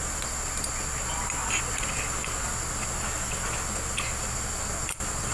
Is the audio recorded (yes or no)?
yes